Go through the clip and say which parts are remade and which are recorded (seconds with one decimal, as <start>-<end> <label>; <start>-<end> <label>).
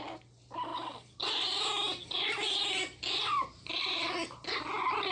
0.0-0.7 recorded; 0.7-3.2 remade; 3.2-5.1 recorded